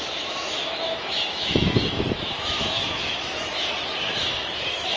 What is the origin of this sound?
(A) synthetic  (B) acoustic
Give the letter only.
A